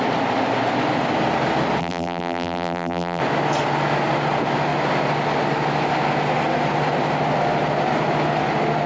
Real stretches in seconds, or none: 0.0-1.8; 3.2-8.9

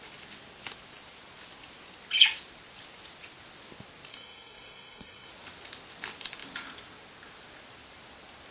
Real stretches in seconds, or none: 0.0-4.1; 5.3-8.5

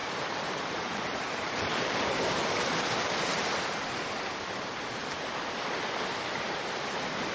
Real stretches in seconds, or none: 2.5-7.3

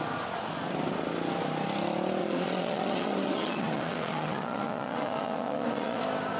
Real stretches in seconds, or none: 0.0-2.2; 6.0-6.4

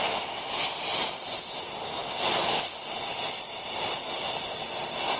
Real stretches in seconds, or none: 0.0-5.2

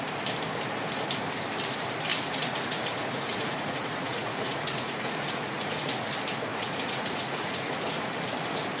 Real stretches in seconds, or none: 0.0-2.1; 6.1-6.5; 8.1-8.8

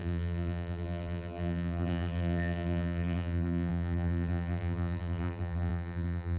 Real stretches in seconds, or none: none